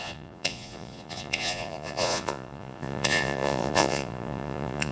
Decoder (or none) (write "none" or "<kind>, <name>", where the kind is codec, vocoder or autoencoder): vocoder, Vocos